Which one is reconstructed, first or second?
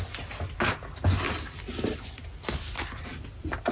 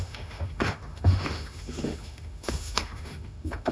second